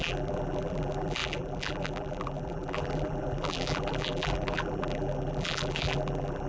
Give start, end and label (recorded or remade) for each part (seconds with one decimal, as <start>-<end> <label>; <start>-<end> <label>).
0.0-6.5 remade